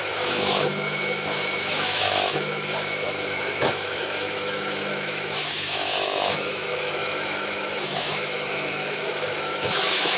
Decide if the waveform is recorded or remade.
remade